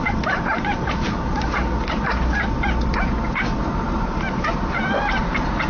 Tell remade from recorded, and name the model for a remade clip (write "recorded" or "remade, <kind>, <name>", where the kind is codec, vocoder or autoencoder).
remade, vocoder, BigVGAN v2